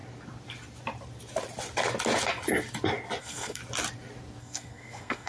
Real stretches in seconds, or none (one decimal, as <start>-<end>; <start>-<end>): 0.0-3.2; 3.6-4.4